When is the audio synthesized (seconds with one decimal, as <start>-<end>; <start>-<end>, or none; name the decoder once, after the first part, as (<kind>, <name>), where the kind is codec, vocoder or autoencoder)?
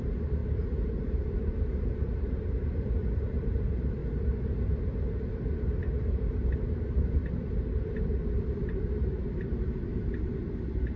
0.0-4.0 (vocoder, BigVGAN v2); 6.0-7.2; 7.8-11.0